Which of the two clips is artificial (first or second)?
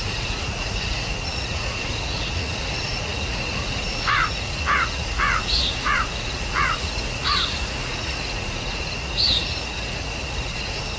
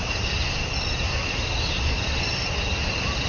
first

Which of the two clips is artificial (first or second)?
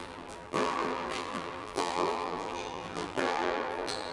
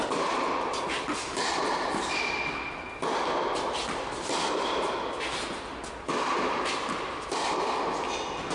first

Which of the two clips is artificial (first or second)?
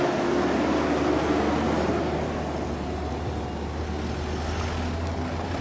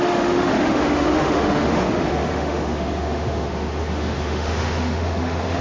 second